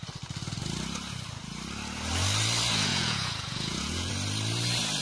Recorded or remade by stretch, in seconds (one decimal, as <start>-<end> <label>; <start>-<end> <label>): 0.0-2.9 recorded; 2.9-4.1 remade; 4.1-5.0 recorded